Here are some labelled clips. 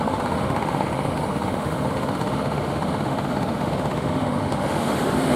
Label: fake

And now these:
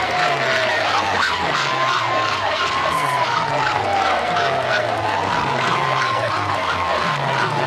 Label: fake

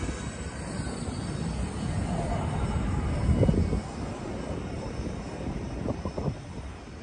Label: real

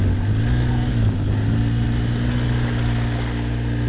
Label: real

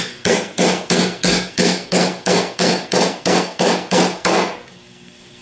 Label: fake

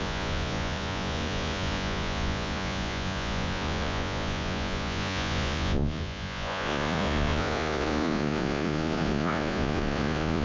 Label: fake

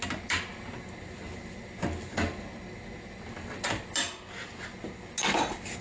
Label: real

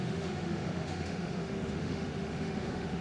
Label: fake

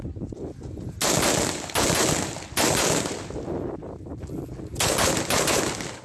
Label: real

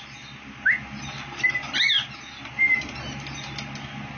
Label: real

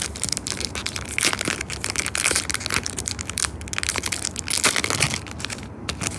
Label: real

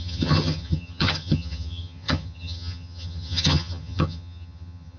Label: fake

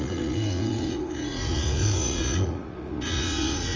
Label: fake